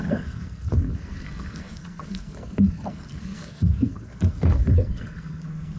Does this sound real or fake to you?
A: fake